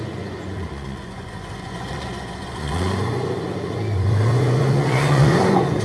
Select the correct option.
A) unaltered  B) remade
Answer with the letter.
B